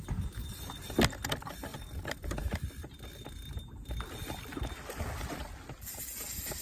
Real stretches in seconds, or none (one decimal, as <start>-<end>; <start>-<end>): 0.0-6.6